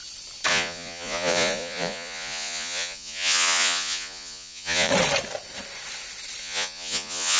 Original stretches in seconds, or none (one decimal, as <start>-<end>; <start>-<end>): 0.0-0.5; 4.9-6.4